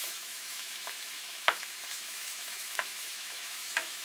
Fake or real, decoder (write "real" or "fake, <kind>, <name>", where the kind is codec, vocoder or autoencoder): fake, autoencoder, DAC-VAE